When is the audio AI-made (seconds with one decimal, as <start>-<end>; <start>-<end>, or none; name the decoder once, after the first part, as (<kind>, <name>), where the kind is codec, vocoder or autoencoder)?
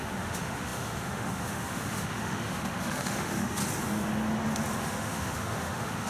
0.0-3.6 (autoencoder, DAC-VAE); 4.8-6.1